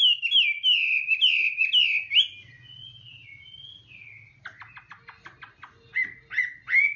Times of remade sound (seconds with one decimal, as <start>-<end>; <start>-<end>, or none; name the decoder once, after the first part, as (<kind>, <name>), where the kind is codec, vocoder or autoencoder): none